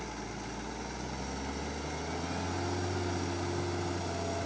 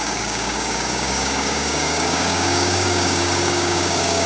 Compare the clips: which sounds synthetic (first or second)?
second